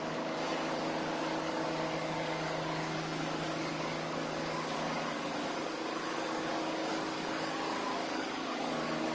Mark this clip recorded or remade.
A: remade